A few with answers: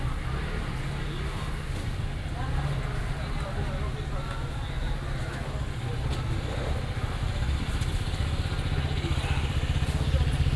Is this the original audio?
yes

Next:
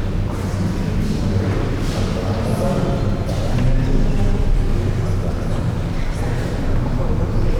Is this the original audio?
yes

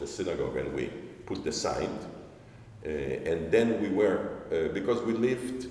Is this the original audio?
yes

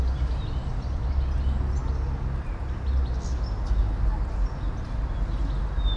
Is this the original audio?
yes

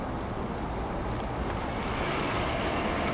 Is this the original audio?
yes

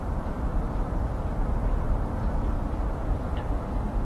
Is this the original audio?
no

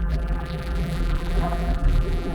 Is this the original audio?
no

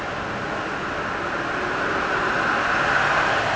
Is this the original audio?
yes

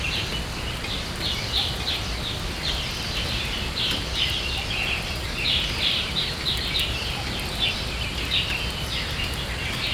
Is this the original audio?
yes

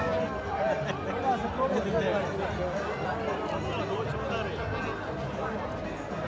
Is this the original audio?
yes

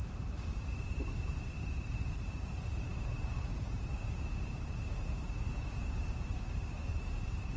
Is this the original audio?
no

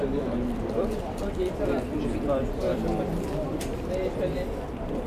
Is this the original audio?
no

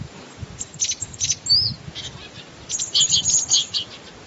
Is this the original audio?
yes